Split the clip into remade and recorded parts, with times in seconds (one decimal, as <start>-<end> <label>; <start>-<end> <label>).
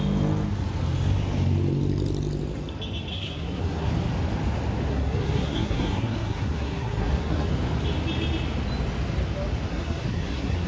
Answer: 0.0-3.1 recorded; 3.1-3.9 remade; 3.9-4.9 recorded; 4.9-7.5 remade; 7.5-9.7 recorded; 9.7-10.7 remade